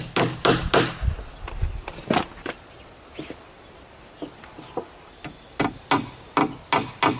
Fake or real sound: real